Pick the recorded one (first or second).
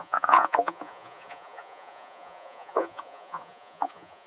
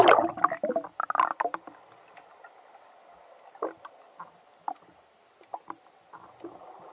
second